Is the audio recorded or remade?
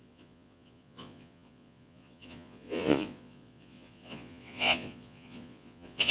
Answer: remade